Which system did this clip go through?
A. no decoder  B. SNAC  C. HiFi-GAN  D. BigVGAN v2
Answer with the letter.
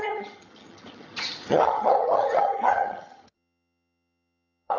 C